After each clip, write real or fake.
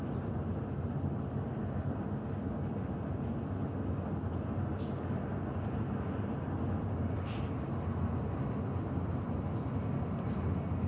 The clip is real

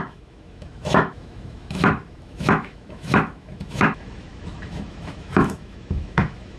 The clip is fake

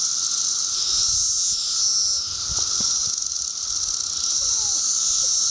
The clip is real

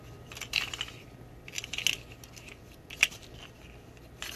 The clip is real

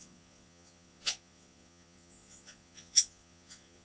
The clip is fake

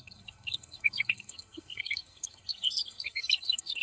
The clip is fake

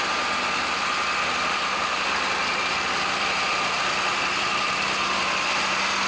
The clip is real